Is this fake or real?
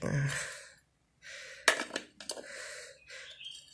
real